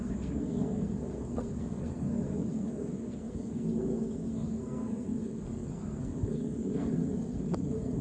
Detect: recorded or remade remade